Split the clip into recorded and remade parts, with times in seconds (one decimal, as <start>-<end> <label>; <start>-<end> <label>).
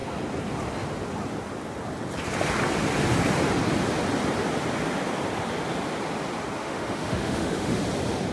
0.0-6.6 recorded; 6.6-7.8 remade; 7.8-8.3 recorded